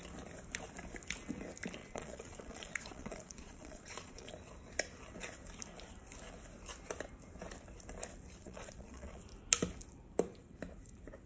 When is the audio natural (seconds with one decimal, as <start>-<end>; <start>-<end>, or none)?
0.0-1.8; 4.3-8.4; 9.2-11.3